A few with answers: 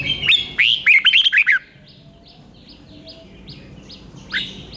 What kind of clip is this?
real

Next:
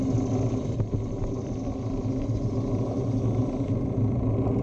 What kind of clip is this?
real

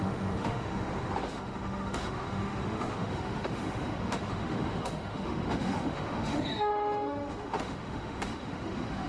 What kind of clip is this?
fake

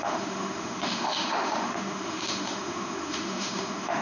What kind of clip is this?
fake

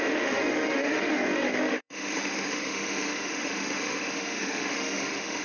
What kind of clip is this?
fake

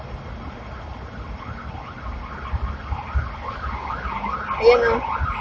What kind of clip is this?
real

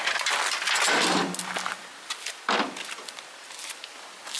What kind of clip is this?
real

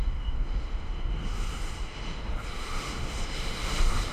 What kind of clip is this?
fake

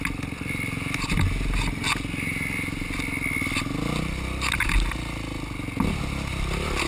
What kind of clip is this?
real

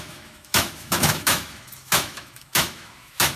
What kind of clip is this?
fake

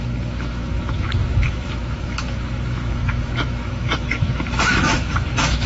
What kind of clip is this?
fake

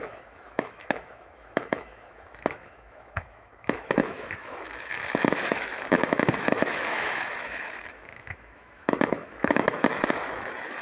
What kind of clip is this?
fake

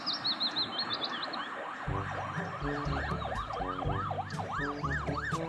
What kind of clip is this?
real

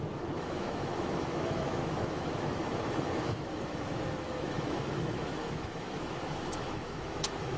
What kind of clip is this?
fake